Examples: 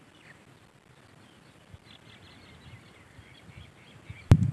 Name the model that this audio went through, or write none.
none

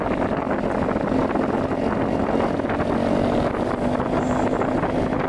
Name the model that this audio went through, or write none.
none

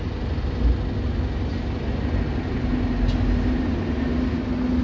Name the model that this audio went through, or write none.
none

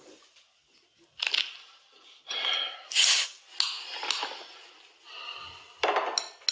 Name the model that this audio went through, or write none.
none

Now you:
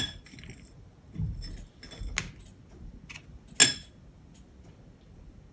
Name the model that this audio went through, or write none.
none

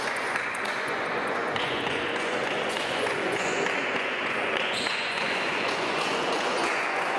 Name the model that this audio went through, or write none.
vocoder, Vocos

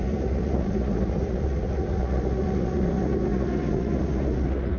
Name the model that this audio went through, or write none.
vocoder, Vocos